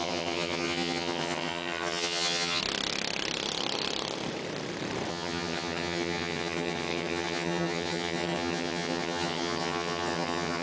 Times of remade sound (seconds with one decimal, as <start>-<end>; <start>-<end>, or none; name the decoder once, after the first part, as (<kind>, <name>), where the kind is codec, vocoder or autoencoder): 0.0-2.6 (vocoder, HiFi-GAN); 5.1-10.6